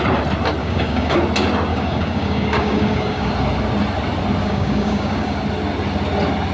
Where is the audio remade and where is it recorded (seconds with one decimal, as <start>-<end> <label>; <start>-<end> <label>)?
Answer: 0.0-0.6 recorded; 0.6-1.2 remade; 1.2-1.7 recorded; 1.7-3.3 remade; 3.3-4.4 recorded; 4.4-5.4 remade; 5.4-6.5 recorded